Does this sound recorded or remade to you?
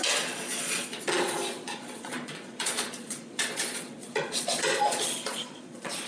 remade